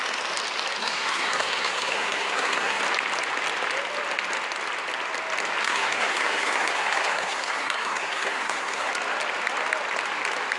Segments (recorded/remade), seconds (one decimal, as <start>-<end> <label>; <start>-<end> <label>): 0.0-0.8 recorded; 0.8-2.8 remade; 2.8-5.6 recorded; 5.6-8.9 remade; 8.9-10.6 recorded